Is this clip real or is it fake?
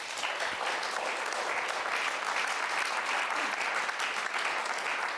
real